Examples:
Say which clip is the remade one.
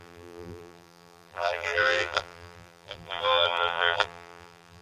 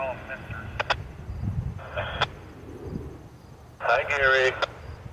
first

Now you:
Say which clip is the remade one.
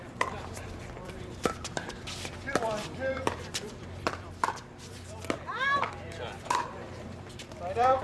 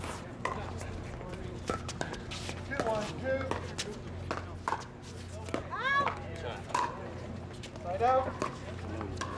first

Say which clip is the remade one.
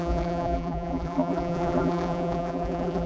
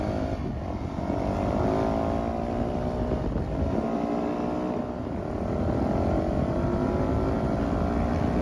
first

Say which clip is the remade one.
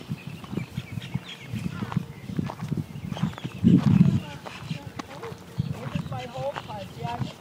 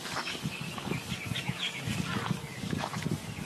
second